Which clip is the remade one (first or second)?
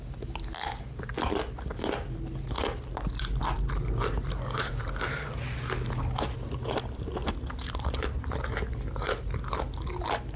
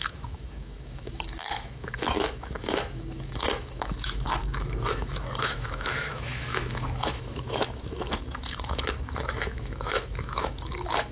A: second